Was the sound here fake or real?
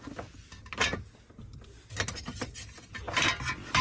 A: real